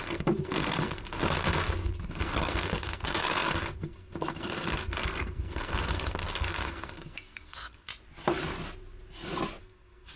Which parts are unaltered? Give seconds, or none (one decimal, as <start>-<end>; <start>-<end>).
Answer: 7.9-9.6